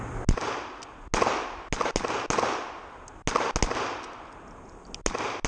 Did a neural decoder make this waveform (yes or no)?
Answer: no